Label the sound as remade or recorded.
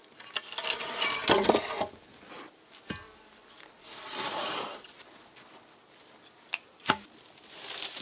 recorded